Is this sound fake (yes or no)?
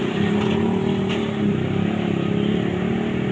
no